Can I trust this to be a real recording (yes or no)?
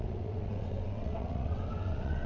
no